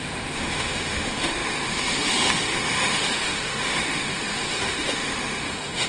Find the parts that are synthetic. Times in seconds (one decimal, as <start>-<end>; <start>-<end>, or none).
0.0-5.9

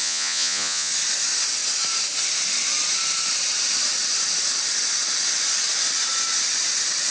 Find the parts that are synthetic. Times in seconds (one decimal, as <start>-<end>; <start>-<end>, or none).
0.0-0.9